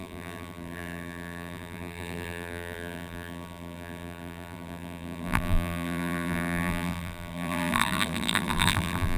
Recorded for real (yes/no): no